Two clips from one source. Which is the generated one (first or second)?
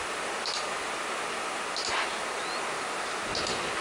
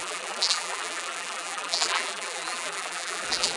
second